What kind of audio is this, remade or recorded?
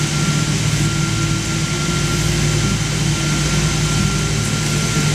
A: recorded